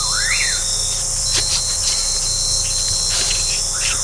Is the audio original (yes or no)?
yes